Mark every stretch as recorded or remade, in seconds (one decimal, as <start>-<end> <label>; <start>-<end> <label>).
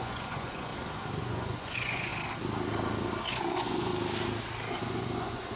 0.0-0.7 remade; 0.7-1.2 recorded; 1.2-2.1 remade; 2.1-3.3 recorded; 3.3-3.9 remade; 3.9-4.7 recorded; 4.7-5.6 remade